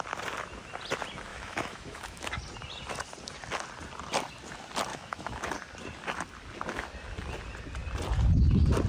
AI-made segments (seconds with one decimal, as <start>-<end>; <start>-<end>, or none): 1.3-2.3; 4.9-5.5